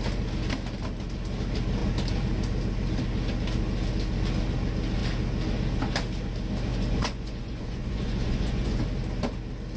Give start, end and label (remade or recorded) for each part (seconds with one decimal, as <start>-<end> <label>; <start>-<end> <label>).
0.0-6.7 recorded; 6.7-8.8 remade; 8.8-9.8 recorded